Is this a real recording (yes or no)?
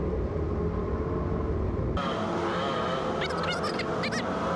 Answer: yes